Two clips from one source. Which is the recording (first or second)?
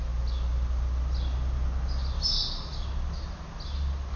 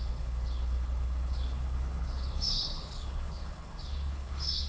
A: first